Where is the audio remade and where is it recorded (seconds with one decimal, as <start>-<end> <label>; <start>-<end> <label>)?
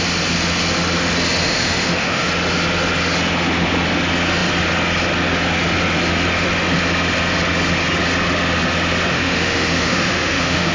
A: 0.0-1.4 recorded; 1.4-2.3 remade; 2.3-9.1 recorded; 9.1-10.7 remade